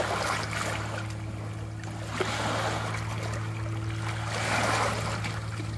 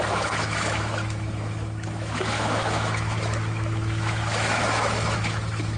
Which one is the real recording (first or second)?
first